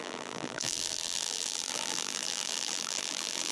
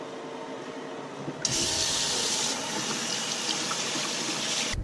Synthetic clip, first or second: first